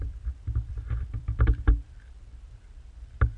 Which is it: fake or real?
fake